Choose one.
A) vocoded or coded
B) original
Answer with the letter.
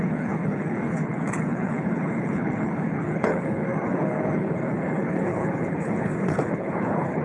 A